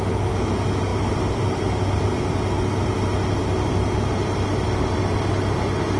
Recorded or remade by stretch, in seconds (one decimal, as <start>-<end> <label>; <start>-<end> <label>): 0.0-0.9 recorded; 0.9-2.2 remade; 2.2-6.0 recorded